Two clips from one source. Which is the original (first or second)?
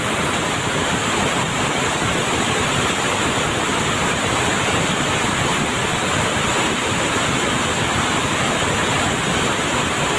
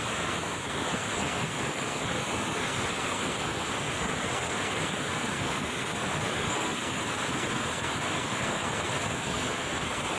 first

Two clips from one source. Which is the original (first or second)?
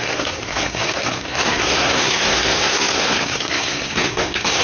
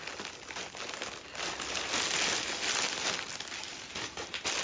second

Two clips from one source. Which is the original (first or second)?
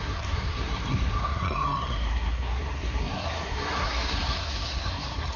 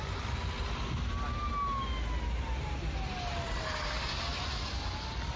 second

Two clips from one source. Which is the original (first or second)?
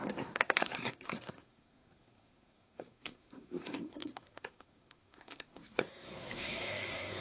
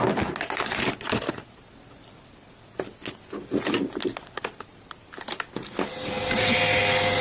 second